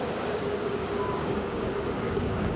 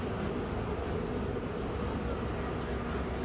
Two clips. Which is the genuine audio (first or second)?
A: second